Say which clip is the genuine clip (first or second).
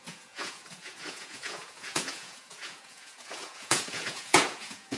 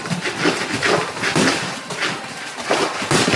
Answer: second